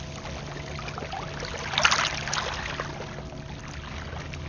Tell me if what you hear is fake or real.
real